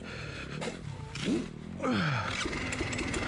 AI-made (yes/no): no